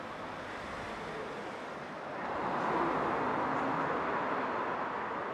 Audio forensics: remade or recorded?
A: recorded